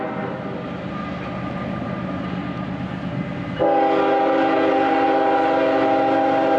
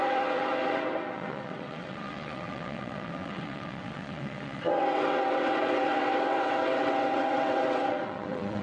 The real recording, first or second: first